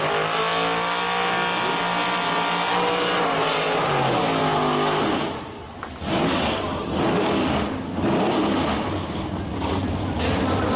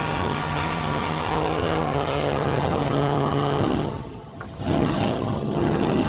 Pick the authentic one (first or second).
first